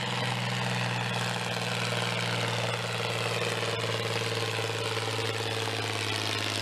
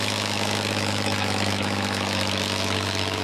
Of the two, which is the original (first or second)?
first